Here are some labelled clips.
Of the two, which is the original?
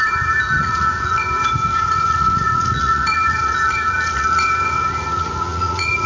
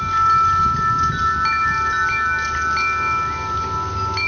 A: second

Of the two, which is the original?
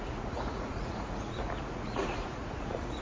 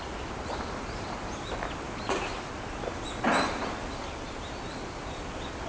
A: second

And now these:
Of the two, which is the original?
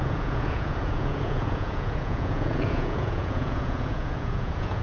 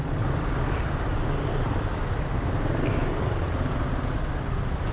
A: second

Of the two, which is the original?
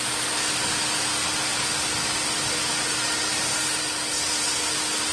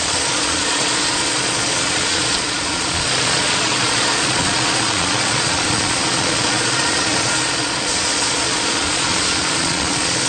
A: first